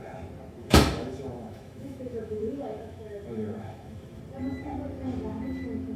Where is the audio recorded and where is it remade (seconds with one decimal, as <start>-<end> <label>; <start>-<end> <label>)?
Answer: 0.0-0.6 recorded; 0.6-4.2 remade; 4.2-6.0 recorded